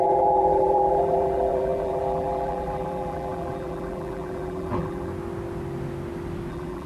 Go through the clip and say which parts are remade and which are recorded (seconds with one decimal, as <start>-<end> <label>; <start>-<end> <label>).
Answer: 0.0-5.1 remade; 5.1-6.5 recorded; 6.5-6.9 remade